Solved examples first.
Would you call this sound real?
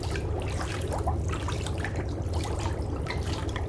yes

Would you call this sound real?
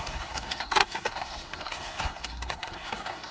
no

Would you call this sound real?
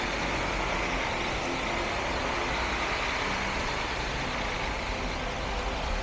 yes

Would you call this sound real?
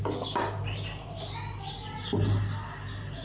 yes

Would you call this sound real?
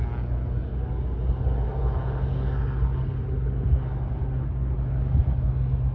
yes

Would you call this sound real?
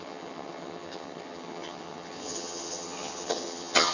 no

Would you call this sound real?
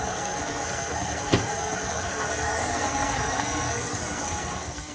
no